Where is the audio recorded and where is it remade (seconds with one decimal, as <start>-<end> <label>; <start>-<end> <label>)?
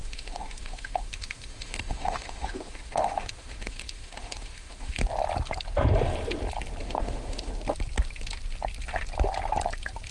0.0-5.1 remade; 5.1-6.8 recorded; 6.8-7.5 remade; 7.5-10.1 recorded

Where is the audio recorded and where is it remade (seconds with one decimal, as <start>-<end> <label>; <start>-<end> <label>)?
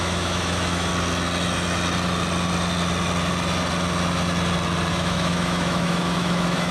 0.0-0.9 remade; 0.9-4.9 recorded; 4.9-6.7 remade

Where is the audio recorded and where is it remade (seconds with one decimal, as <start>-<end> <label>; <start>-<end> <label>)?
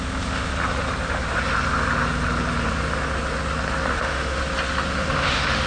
0.0-0.5 remade; 0.5-3.9 recorded; 3.9-4.4 remade; 4.4-4.9 recorded; 4.9-5.7 remade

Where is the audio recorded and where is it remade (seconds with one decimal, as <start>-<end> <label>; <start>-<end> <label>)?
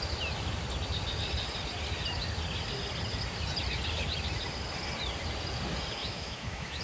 0.0-6.0 recorded; 6.0-6.8 remade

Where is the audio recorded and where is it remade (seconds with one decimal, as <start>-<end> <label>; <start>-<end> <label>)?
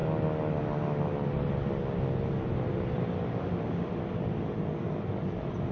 0.0-3.4 recorded; 3.4-4.0 remade; 4.0-5.7 recorded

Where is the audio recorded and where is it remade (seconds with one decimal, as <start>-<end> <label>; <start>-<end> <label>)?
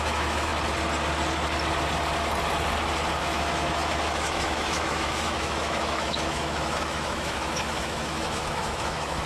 0.0-0.5 remade; 0.5-3.2 recorded; 3.2-9.3 remade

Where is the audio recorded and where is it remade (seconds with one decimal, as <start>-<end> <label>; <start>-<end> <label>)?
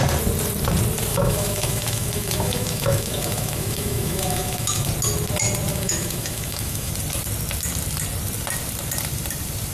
0.0-1.1 recorded; 1.1-4.9 remade; 4.9-5.7 recorded; 5.7-6.9 remade; 6.9-9.7 recorded